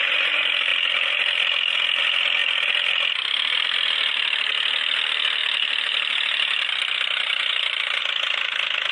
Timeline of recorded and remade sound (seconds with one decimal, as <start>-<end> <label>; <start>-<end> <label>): 0.0-5.4 recorded; 5.4-8.0 remade; 8.0-8.9 recorded